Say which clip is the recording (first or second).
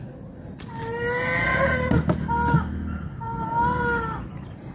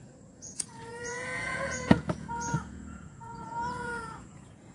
first